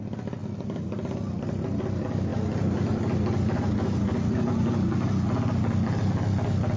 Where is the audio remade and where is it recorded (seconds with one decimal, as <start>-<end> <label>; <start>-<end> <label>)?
0.0-6.8 recorded